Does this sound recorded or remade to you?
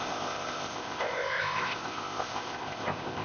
remade